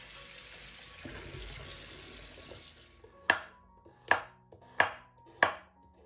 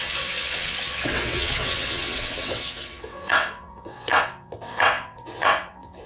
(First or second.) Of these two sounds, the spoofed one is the second